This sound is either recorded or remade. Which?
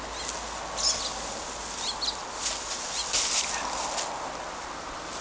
recorded